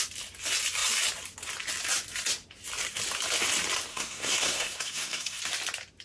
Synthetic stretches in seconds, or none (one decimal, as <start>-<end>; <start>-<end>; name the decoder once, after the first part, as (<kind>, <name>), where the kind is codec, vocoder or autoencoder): 3.9-5.4 (codec, SNAC)